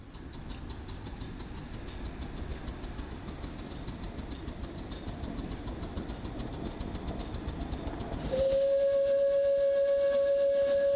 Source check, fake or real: real